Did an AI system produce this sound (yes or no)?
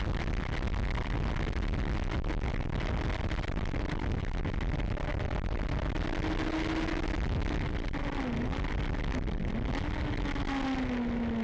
no